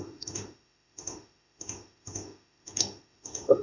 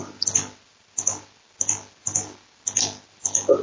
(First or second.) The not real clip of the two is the first